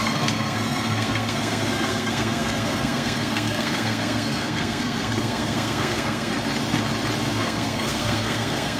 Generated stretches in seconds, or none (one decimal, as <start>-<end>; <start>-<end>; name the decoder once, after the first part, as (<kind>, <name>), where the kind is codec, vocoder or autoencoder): 0.0-6.3 (codec, SNAC); 7.3-8.8